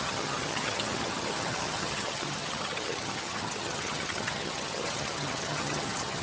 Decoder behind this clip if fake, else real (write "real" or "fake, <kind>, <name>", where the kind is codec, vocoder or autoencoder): fake, vocoder, HiFi-GAN